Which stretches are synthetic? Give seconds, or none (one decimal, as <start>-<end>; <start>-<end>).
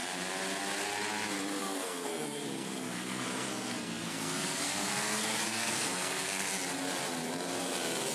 1.6-6.5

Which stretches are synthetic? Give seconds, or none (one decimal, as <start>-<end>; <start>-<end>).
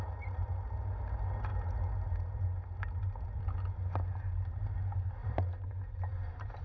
5.2-6.6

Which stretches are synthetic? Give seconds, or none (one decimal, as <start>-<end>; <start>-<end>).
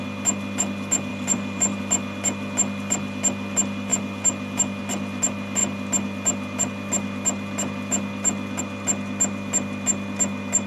1.1-1.8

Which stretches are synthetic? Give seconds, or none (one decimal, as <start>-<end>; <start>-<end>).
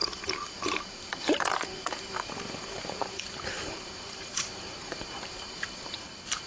0.0-6.5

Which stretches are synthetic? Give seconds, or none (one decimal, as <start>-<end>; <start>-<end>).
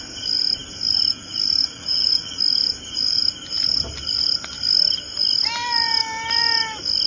1.6-2.4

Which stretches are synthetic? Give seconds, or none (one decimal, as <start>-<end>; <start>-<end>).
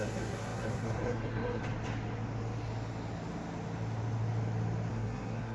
0.0-1.6; 4.9-5.5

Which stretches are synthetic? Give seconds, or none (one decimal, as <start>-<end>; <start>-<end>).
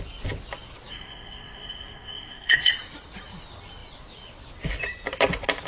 0.9-2.7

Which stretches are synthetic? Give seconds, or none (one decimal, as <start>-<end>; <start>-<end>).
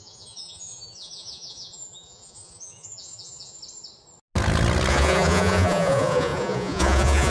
0.0-3.6; 4.9-7.3